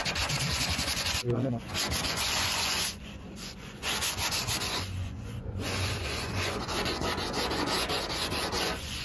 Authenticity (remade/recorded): remade